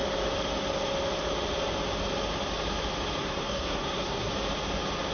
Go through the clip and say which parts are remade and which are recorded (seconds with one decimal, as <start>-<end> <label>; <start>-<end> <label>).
0.0-3.2 recorded; 3.2-4.3 remade; 4.3-5.1 recorded